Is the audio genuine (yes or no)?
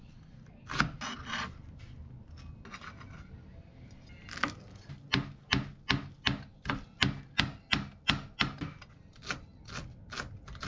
yes